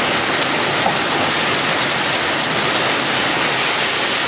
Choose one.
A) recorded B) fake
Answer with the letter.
A